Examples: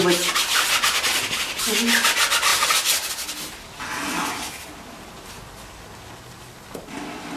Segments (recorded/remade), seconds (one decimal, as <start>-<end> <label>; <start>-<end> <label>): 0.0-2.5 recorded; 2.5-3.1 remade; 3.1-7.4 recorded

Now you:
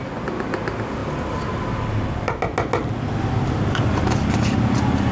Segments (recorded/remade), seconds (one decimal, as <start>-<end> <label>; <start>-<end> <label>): 0.0-5.1 recorded

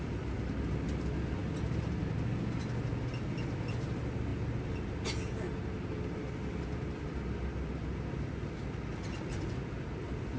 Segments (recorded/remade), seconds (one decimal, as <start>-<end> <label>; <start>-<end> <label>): 0.0-10.4 recorded